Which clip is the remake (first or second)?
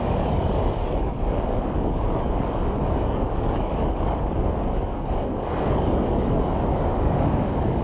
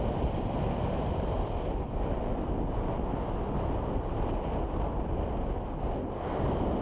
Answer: first